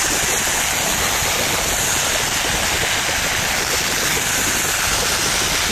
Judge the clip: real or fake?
real